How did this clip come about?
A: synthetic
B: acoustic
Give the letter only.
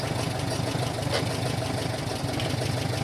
B